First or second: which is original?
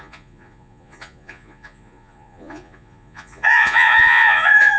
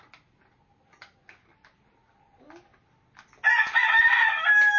second